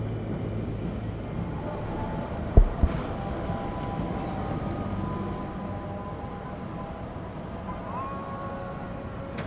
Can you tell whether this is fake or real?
real